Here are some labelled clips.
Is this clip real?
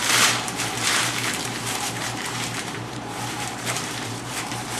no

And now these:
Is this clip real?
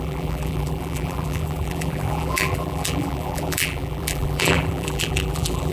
no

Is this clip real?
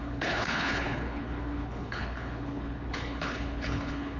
no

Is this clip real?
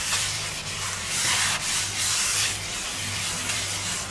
no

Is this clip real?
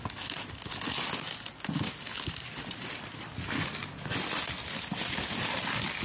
yes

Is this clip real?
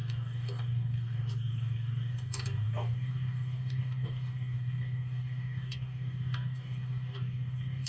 no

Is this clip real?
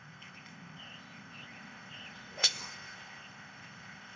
no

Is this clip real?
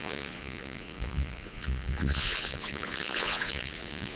no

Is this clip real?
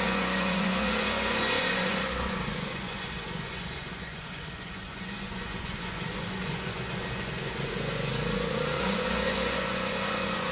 no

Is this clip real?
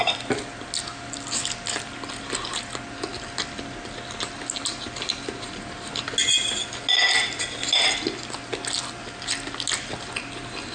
yes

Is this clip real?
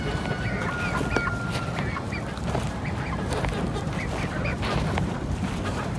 yes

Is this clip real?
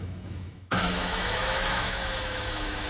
no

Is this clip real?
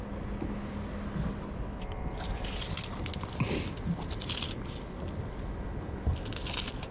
yes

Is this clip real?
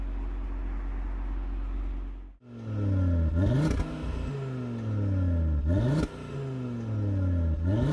yes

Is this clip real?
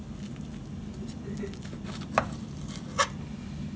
yes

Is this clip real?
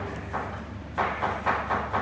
yes